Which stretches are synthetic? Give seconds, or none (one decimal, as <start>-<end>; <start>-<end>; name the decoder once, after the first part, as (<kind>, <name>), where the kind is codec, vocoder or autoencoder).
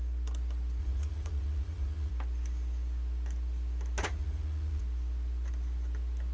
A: 0.8-2.1 (vocoder, Vocos); 4.0-4.8